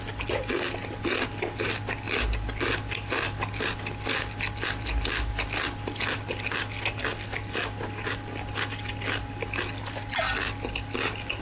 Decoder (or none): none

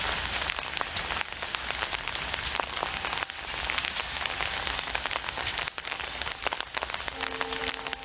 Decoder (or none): none